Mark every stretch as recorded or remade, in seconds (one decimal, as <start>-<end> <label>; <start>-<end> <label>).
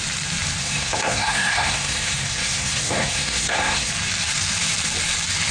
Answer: 0.0-0.6 recorded; 0.6-3.9 remade; 3.9-5.5 recorded